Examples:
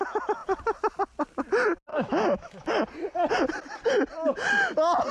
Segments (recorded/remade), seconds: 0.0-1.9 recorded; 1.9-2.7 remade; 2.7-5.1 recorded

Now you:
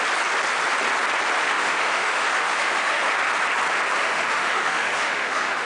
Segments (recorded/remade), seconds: 0.0-1.4 recorded; 1.4-3.1 remade; 3.1-4.0 recorded; 4.0-5.7 remade

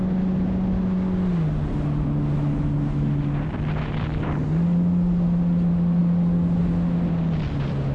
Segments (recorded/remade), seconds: 0.0-7.9 recorded

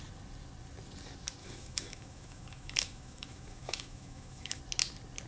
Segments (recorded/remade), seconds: 0.0-1.4 recorded; 1.4-4.6 remade; 4.6-5.3 recorded

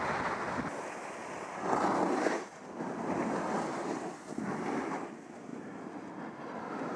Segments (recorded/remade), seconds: 0.0-7.0 recorded